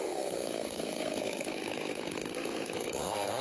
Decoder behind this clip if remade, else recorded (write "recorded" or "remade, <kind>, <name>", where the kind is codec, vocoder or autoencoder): remade, codec, SNAC